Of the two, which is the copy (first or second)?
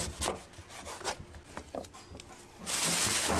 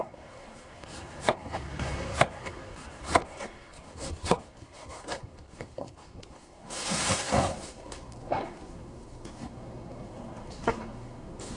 second